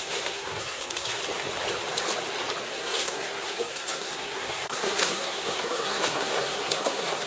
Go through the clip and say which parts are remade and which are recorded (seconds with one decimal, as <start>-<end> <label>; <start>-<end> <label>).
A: 0.0-1.2 remade; 1.2-2.7 recorded; 2.7-7.3 remade